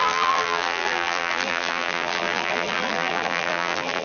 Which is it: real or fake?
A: fake